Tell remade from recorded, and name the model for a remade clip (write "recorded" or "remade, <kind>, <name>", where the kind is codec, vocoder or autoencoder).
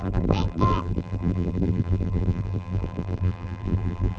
remade, vocoder, BigVGAN v2